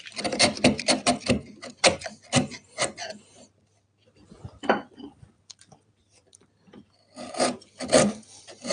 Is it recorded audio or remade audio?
remade